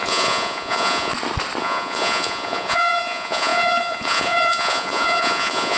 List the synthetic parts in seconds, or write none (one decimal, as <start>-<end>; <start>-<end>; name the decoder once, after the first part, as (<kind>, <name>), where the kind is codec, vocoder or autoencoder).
0.0-1.1 (vocoder, Vocos); 1.6-5.8

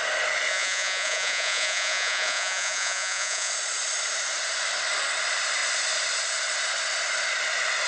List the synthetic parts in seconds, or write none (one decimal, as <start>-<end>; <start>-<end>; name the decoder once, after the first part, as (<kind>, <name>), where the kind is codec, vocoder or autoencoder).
0.5-3.5 (vocoder, Vocos)

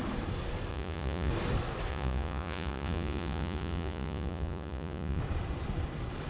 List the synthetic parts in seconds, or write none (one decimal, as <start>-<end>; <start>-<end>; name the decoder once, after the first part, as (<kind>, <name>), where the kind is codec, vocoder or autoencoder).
0.7-1.3 (vocoder, Vocos); 1.9-5.2

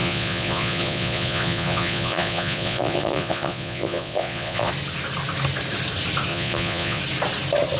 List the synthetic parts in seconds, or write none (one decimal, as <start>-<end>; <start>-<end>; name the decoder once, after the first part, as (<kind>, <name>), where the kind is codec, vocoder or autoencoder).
0.0-4.7 (vocoder, Vocos); 6.3-7.0

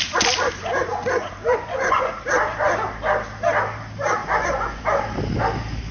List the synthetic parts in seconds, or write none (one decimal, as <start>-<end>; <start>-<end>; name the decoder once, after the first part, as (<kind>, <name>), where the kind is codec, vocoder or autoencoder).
1.4-2.1 (vocoder, Vocos); 4.2-4.8

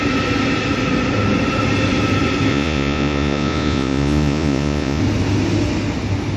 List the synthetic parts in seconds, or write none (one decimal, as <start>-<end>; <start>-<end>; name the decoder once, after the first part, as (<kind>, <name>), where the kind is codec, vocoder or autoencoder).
2.5-5.0 (vocoder, Vocos)